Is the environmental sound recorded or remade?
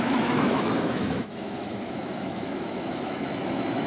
remade